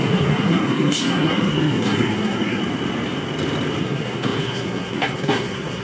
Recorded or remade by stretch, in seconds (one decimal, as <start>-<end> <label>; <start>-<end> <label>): 0.0-2.6 remade; 2.6-3.8 recorded; 3.8-5.8 remade